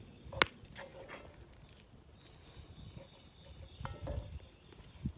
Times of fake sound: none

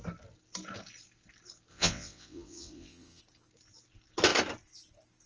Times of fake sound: 1.7-3.2 (vocoder, WaveNeXt)

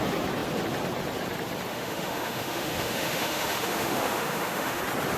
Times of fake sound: 1.7-4.8 (autoencoder, DAC-VAE)